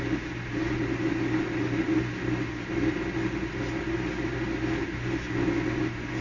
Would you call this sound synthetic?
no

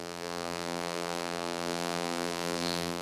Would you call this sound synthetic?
yes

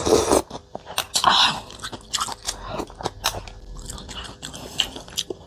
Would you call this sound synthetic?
no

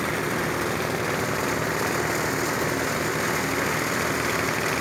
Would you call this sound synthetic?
no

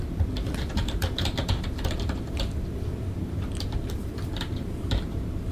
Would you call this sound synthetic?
yes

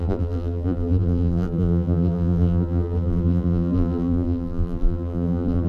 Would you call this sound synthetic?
yes